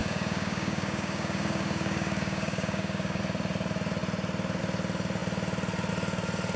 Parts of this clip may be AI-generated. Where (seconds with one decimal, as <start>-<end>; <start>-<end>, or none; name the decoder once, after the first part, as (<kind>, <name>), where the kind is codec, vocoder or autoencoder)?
0.0-3.2 (codec, DAC)